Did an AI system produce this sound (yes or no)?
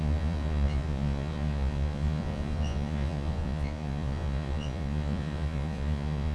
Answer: yes